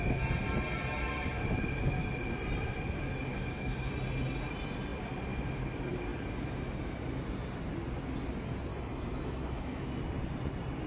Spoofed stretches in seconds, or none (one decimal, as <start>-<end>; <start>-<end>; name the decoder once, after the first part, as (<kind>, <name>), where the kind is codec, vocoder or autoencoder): 3.3-3.9 (autoencoder, DAC-VAE); 8.7-10.0